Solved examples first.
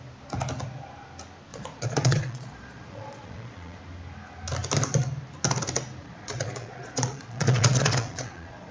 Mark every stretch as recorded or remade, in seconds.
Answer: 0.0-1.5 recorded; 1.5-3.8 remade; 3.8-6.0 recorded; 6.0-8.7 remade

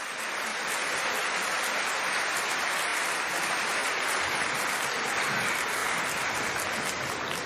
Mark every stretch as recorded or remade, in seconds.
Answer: 0.0-0.5 recorded; 0.5-1.6 remade; 1.6-2.9 recorded; 2.9-3.4 remade; 3.4-3.8 recorded; 3.8-4.7 remade; 4.7-7.5 recorded

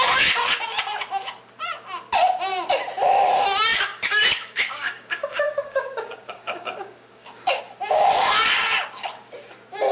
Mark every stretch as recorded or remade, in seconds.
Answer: 0.0-3.7 recorded; 3.7-7.6 remade; 7.6-9.9 recorded